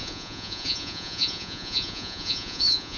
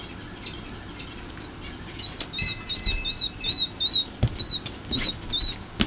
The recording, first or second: second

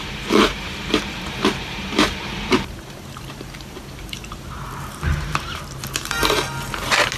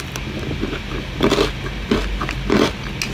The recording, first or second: second